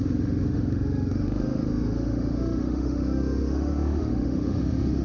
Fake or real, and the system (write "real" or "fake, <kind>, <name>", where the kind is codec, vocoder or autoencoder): fake, autoencoder, DAC-VAE